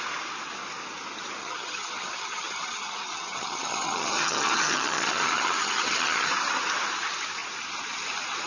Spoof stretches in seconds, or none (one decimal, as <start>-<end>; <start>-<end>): 1.4-6.3